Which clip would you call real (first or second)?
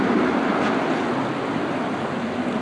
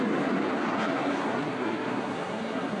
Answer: first